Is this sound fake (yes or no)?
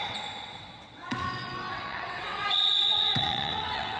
yes